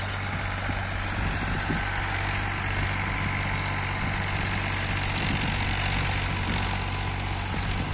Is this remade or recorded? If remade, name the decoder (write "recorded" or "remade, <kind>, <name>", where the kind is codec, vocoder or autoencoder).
recorded